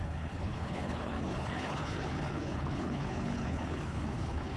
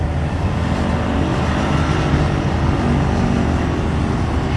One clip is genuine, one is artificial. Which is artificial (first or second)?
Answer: first